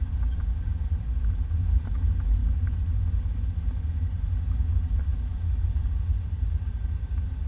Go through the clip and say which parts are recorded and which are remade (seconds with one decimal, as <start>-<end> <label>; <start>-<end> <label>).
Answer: 0.0-7.5 recorded